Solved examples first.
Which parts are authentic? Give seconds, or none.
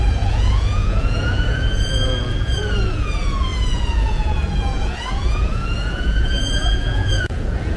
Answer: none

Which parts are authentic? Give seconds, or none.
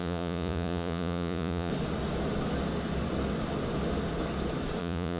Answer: 1.7-4.8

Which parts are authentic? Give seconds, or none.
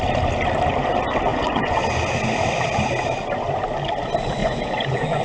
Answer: 0.0-1.3; 1.8-4.4